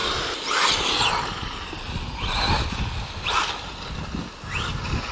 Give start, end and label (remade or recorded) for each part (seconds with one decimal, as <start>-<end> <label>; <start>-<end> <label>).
0.0-5.1 recorded